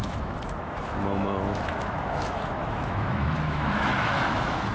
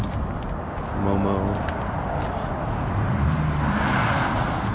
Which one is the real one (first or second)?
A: second